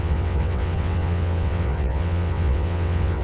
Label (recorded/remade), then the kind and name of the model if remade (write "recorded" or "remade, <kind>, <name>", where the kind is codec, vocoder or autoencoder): remade, vocoder, WaveNeXt